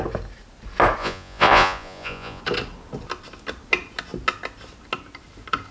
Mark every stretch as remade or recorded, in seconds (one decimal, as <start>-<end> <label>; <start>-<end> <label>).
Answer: 0.0-1.0 recorded; 1.0-2.4 remade; 2.4-5.7 recorded